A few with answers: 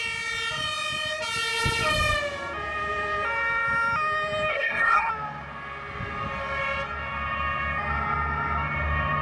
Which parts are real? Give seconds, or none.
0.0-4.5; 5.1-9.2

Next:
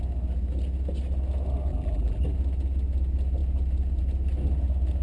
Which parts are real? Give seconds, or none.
0.0-1.7; 2.2-5.0

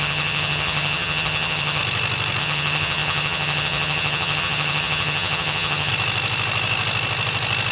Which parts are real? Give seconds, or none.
1.8-2.4; 5.9-7.7

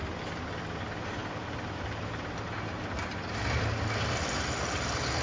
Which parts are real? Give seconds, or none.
0.0-5.2